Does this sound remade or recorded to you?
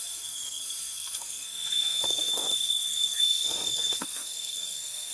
remade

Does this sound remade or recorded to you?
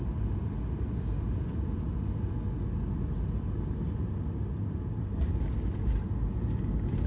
recorded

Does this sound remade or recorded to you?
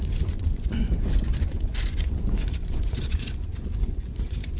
remade